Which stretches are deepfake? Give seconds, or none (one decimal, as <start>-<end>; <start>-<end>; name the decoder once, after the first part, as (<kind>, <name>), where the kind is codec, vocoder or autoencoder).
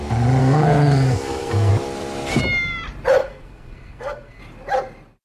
0.4-1.7 (codec, SNAC); 3.2-4.4